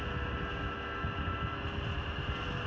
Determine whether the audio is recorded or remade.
recorded